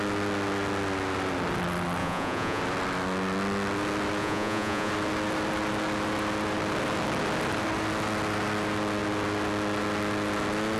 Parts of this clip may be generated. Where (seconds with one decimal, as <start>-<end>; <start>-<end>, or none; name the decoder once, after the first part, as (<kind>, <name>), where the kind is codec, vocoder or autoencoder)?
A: 2.0-2.6 (vocoder, Vocos); 4.2-4.9